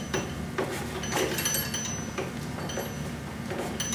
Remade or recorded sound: recorded